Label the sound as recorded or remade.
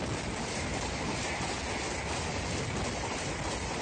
recorded